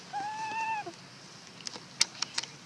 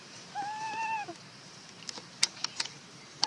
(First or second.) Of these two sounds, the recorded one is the first